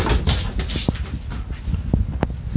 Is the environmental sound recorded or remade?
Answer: recorded